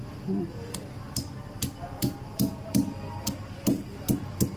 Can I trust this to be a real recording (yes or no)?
yes